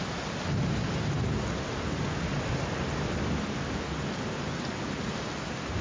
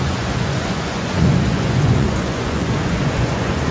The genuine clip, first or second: first